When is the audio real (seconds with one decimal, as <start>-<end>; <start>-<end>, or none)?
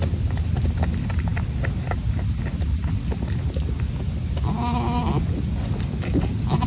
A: 0.0-6.7